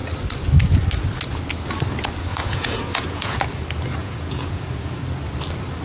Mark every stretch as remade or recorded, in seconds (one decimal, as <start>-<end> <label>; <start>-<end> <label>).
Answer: 0.0-2.3 recorded; 2.3-3.4 remade; 3.4-4.0 recorded; 4.0-5.0 remade; 5.0-5.8 recorded